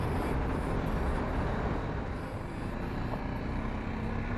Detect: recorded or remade recorded